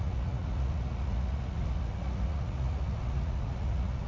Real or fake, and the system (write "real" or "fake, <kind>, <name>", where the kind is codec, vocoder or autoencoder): fake, vocoder, Vocos